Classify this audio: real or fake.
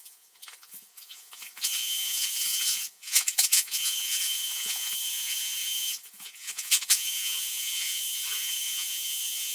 fake